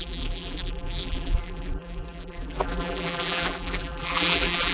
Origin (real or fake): fake